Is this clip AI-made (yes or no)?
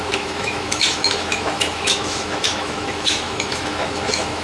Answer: yes